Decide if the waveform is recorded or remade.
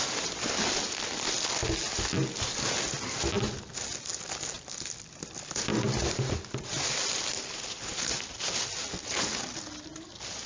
recorded